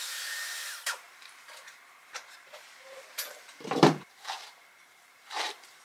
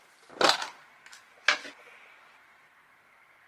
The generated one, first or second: first